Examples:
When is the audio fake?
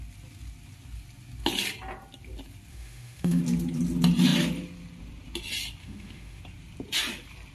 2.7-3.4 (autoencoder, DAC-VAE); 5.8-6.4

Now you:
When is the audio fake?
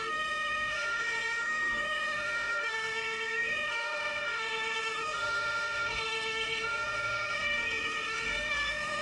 0.0-9.0 (autoencoder, DAC-VAE)